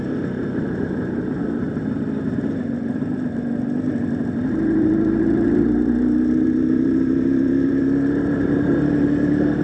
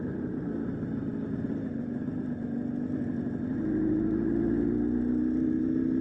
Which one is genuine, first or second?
second